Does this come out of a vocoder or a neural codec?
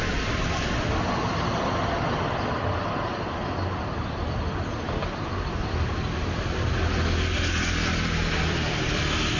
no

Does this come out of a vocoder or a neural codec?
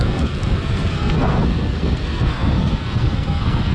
yes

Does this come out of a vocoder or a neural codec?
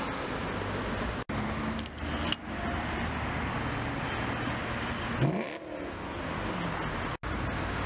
no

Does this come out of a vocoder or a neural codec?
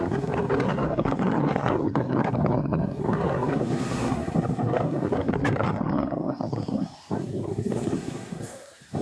yes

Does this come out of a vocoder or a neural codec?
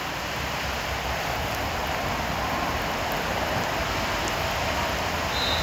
no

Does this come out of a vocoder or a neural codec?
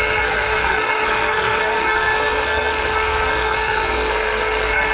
yes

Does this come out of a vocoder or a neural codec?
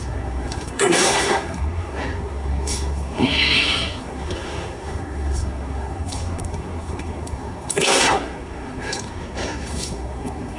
yes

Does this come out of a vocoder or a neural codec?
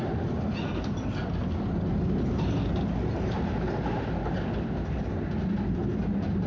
no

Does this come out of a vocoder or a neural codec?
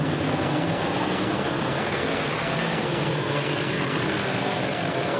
yes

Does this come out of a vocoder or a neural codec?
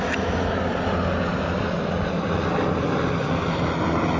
no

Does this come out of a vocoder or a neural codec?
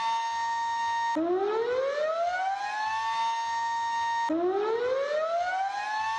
no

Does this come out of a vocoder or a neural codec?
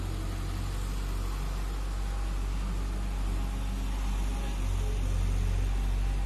no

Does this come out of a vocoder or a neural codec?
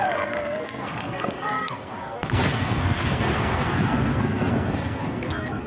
yes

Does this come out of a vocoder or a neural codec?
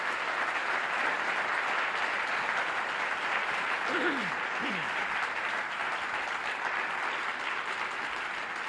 no